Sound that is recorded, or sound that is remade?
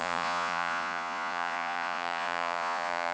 remade